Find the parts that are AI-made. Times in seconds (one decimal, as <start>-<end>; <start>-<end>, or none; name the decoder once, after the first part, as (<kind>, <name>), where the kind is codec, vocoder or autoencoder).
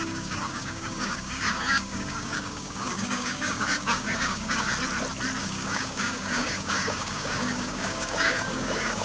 0.0-4.7 (codec, DAC); 5.4-9.0